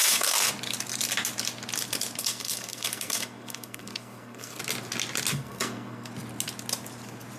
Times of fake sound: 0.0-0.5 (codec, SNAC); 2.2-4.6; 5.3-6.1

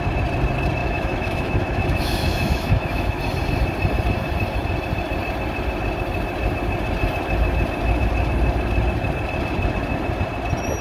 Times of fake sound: 0.8-3.2 (autoencoder, DAC-VAE)